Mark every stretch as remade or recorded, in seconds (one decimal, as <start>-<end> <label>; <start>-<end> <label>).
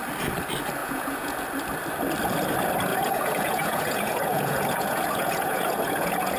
0.0-0.8 recorded; 0.8-1.4 remade; 1.4-2.9 recorded; 2.9-6.4 remade